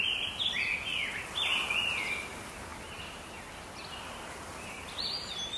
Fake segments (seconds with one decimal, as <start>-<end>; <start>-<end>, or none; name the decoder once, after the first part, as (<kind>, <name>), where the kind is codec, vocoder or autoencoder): 2.7-3.2 (vocoder, BigVGAN v2)